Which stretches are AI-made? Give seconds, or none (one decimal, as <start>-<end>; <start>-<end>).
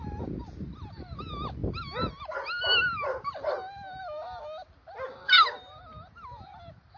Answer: none